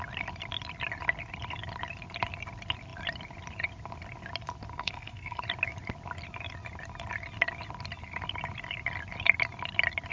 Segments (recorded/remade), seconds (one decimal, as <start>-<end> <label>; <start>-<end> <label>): 0.0-4.7 recorded; 4.7-5.4 remade; 5.4-10.1 recorded